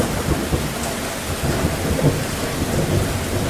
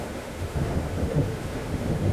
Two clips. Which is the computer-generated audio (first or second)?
second